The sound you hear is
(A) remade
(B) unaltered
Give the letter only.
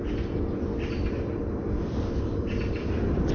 B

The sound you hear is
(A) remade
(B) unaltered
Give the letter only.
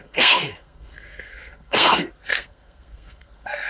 A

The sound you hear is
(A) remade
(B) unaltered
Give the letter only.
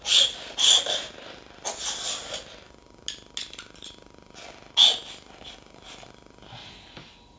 B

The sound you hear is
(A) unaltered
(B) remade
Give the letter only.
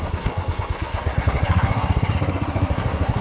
B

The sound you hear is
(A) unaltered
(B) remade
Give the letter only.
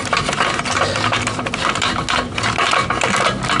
A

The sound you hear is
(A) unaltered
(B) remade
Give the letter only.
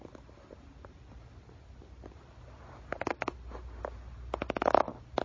A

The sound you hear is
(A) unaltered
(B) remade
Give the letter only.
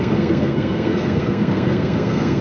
B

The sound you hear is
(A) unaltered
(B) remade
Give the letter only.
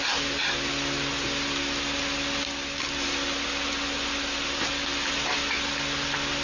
A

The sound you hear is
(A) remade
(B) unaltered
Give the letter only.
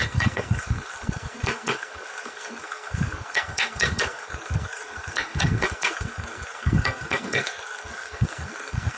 A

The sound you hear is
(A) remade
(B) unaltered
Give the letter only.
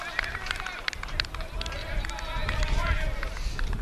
B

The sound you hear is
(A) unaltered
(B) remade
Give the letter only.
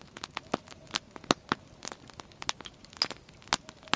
A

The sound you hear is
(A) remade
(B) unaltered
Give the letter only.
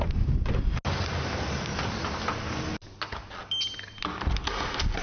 B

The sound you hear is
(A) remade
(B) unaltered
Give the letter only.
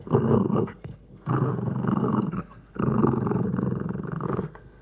A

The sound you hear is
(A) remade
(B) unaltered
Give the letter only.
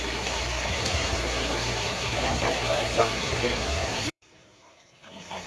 A